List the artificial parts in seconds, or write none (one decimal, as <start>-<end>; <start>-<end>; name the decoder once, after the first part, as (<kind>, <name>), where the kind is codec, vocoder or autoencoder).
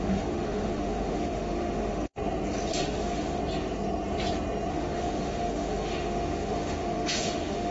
0.0-2.2 (autoencoder, DAC-VAE); 2.7-3.4; 4.7-7.7